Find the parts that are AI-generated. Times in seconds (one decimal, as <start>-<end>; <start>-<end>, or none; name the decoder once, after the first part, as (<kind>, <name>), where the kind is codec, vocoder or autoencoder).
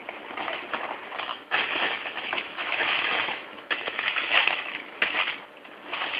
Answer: 1.3-5.0 (autoencoder, DAC-VAE)